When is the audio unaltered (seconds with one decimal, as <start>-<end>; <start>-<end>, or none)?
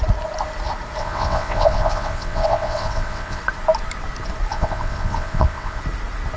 0.0-1.0; 3.4-4.5; 5.8-6.4